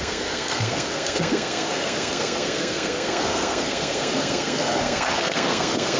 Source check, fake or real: fake